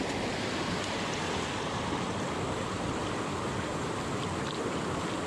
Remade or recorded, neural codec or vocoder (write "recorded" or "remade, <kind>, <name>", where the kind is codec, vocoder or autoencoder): recorded